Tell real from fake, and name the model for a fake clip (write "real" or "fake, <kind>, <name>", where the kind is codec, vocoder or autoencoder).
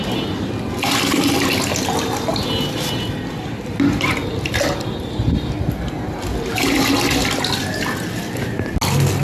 real